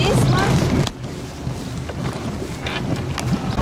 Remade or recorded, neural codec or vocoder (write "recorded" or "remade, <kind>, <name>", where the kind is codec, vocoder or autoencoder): recorded